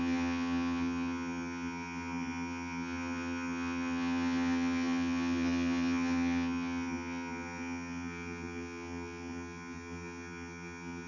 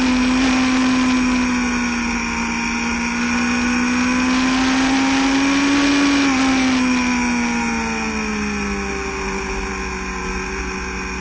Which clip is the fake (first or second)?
first